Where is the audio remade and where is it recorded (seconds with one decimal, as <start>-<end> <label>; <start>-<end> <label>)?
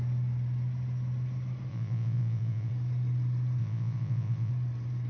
0.0-1.7 recorded; 1.7-2.7 remade; 2.7-3.6 recorded; 3.6-4.5 remade; 4.5-5.1 recorded